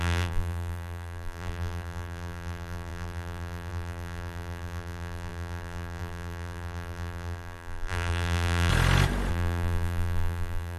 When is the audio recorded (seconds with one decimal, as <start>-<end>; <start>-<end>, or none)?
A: 8.7-9.3